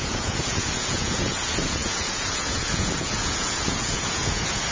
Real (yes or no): no